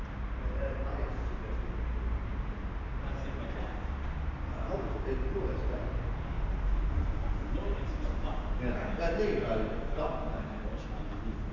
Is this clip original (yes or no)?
yes